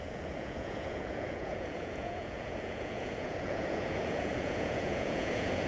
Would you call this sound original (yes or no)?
no